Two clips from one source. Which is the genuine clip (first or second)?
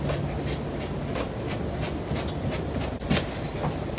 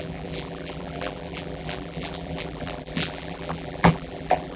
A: first